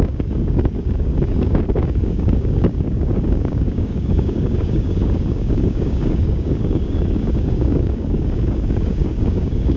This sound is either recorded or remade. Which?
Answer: remade